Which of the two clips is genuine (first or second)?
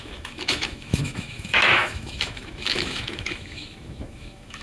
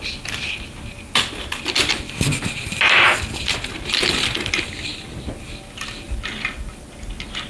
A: second